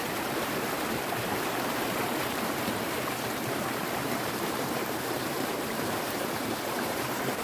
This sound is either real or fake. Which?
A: fake